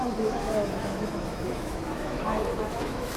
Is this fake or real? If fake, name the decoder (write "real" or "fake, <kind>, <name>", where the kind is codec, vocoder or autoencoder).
fake, autoencoder, DAC-VAE